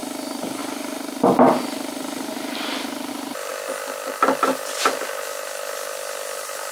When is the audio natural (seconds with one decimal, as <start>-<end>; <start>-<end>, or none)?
0.0-6.7